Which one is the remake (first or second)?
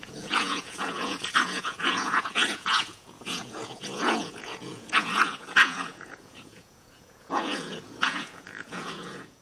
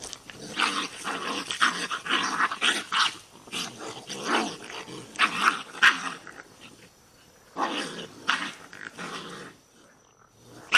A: first